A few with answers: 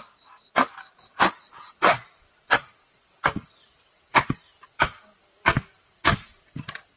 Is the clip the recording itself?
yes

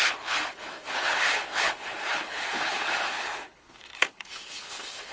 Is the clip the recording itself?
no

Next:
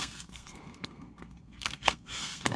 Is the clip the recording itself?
no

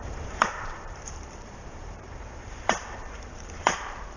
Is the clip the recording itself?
no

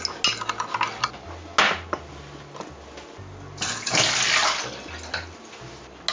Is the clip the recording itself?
yes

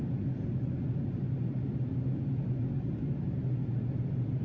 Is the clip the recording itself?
yes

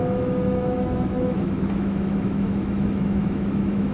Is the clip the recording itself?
no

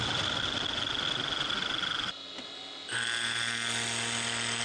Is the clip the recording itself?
yes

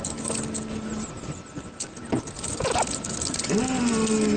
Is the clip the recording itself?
yes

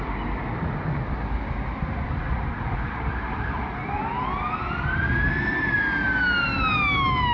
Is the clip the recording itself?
yes